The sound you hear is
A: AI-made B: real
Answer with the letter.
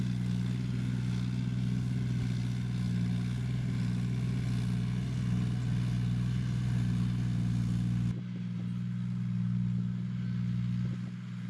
B